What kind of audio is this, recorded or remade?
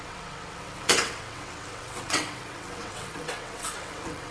remade